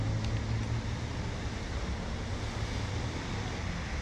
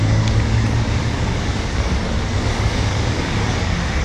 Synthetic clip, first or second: second